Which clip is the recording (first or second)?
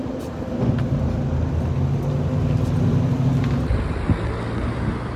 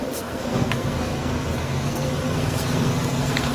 first